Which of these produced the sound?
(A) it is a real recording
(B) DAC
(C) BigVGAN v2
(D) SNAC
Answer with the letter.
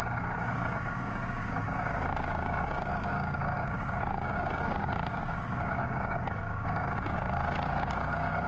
B